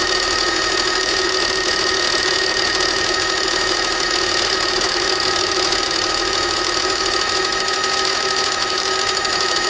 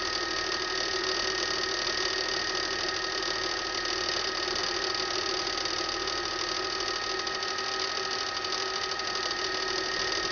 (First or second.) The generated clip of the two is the first